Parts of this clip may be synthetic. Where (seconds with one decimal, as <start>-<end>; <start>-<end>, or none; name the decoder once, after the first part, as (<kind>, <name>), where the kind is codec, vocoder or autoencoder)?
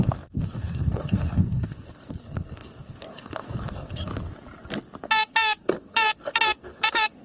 0.0-4.1 (codec, SNAC); 5.0-7.2